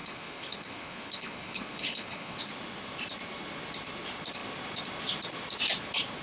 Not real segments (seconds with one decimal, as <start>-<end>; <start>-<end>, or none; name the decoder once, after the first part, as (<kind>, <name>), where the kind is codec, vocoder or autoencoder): 0.0-2.4 (codec, HILCodec)